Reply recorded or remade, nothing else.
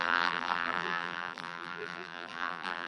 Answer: remade